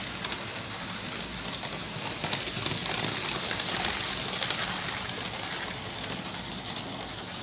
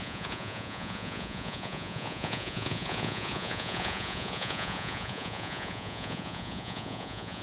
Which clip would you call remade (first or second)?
second